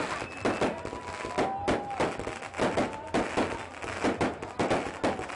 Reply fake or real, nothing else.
real